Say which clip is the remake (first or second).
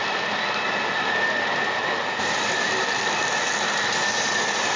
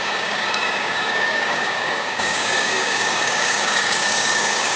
second